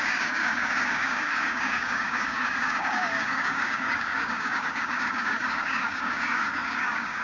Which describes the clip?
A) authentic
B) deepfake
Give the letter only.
B